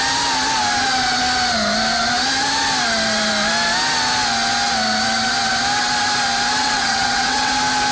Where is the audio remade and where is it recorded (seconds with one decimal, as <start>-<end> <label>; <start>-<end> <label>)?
0.0-6.6 recorded; 6.6-7.5 remade; 7.5-7.9 recorded